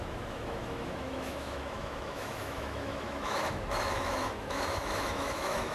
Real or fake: fake